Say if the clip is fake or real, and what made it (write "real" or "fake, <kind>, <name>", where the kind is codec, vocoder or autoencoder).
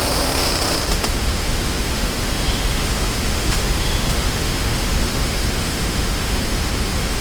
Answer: fake, autoencoder, DAC-VAE